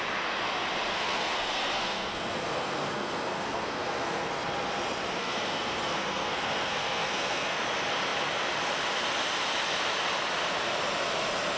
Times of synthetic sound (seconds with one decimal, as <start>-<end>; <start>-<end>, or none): 0.9-4.3; 5.2-7.6